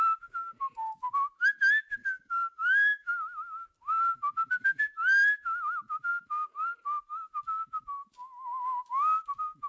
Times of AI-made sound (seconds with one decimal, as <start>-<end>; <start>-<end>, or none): 2.0-3.1